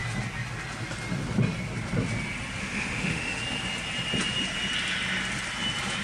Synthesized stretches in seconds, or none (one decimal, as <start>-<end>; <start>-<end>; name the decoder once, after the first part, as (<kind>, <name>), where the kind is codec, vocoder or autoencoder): 2.6-3.4 (autoencoder, DAC-VAE)